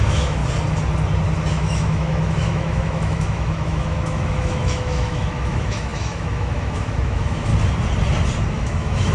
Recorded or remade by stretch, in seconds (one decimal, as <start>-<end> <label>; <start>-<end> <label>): 0.0-0.4 remade; 0.4-1.5 recorded; 1.5-7.5 remade; 7.5-8.5 recorded; 8.5-9.1 remade